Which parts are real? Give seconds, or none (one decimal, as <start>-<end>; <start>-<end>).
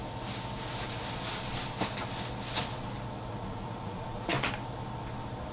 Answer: 0.0-3.3; 4.3-5.5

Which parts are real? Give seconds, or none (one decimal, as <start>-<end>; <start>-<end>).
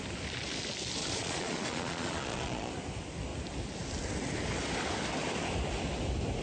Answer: 0.0-1.0; 2.7-6.4